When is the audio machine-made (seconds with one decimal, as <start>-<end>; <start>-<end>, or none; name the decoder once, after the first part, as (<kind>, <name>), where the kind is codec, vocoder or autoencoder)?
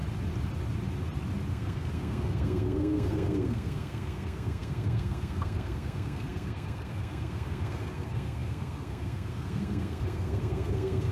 1.5-11.1 (codec, SNAC)